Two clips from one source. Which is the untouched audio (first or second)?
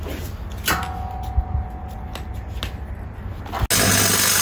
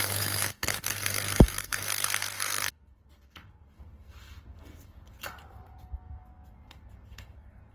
first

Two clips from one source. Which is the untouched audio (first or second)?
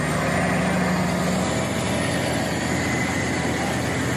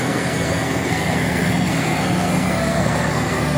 first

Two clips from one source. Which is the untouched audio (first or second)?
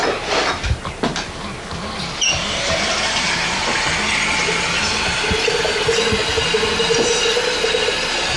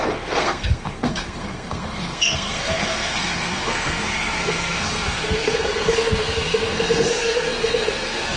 first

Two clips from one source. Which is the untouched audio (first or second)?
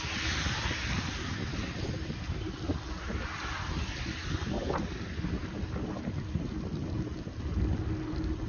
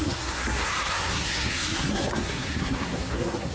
first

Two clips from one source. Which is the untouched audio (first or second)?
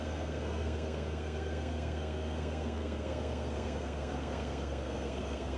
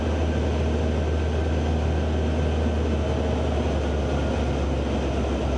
second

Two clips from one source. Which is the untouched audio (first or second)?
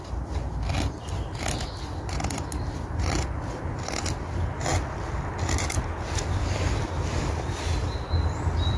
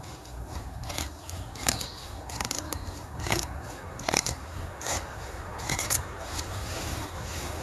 first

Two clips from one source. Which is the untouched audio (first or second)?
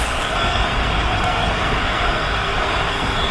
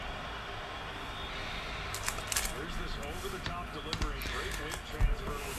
second